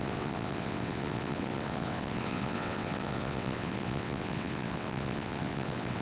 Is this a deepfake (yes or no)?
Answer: yes